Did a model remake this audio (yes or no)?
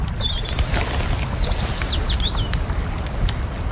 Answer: no